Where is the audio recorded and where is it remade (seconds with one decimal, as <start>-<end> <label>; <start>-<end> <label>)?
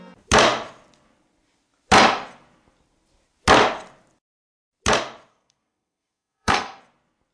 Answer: 0.0-5.3 recorded; 5.3-6.8 remade; 6.8-7.3 recorded